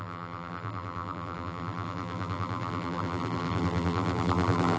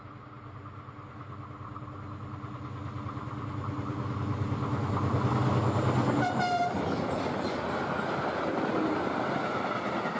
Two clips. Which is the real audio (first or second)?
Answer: second